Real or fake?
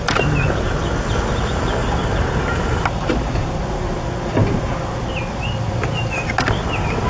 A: real